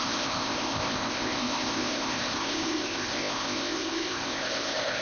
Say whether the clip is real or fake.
fake